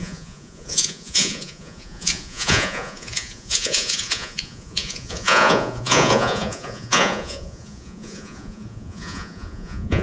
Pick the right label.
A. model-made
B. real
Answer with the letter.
A